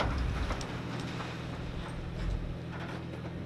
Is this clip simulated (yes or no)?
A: no